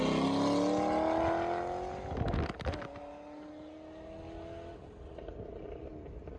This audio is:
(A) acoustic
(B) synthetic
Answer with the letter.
A